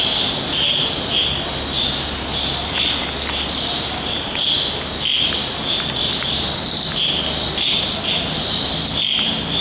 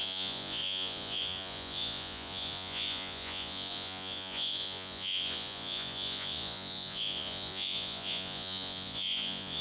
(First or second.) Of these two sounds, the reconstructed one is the second